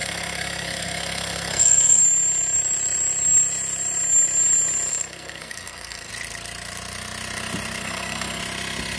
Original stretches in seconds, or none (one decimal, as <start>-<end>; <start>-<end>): 2.0-4.9; 6.1-7.8; 8.4-9.0